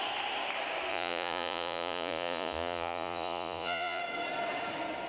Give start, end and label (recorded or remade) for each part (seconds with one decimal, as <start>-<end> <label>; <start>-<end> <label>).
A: 0.0-0.9 recorded; 0.9-4.0 remade; 4.0-5.1 recorded